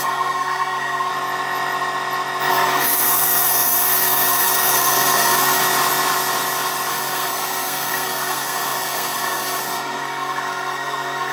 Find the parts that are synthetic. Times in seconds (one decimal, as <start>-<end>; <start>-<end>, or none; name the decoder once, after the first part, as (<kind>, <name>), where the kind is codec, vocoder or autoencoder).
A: 0.0-1.1 (codec, SNAC); 2.5-5.6; 6.9-11.3